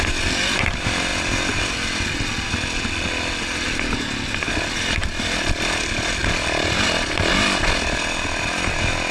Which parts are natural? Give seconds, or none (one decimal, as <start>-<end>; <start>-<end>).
0.0-9.1